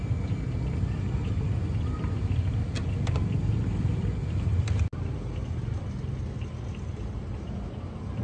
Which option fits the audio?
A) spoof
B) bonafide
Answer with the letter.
B